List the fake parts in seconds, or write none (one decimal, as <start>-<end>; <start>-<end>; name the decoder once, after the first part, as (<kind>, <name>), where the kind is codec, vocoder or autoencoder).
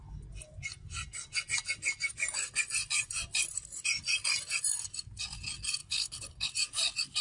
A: 5.8-6.5 (codec, HILCodec)